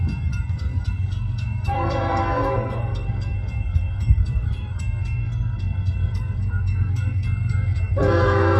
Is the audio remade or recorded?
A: remade